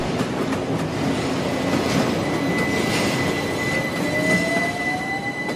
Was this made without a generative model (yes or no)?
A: yes